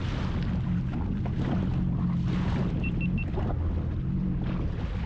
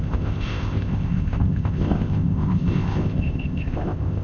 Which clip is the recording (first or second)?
first